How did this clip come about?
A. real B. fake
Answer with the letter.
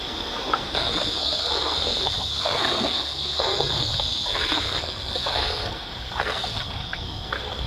B